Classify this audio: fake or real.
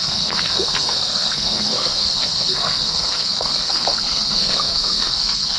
fake